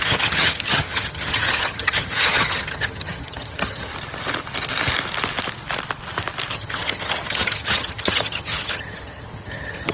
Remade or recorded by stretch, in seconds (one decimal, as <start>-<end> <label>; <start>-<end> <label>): 0.0-3.9 remade; 3.9-6.5 recorded; 6.5-9.9 remade